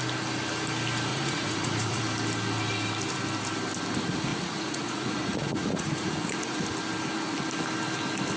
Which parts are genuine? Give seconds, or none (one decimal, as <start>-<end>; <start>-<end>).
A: 0.0-1.1; 2.0-4.3; 6.6-8.4